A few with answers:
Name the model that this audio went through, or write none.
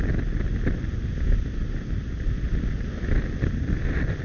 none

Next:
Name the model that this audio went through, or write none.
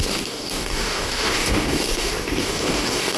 codec, DAC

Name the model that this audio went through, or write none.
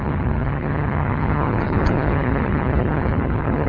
vocoder, HiFi-GAN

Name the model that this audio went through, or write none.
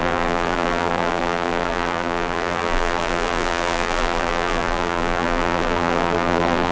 vocoder, BigVGAN v2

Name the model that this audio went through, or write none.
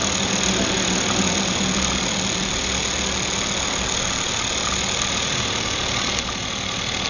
none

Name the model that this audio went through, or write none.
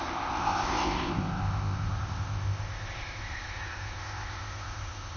codec, ZipCodec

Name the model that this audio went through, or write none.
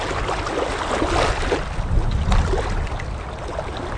none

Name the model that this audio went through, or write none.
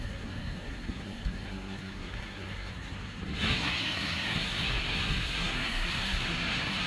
codec, SNAC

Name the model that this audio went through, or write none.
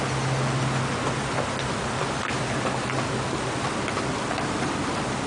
none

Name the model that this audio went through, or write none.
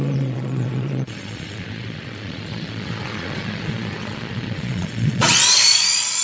vocoder, Vocos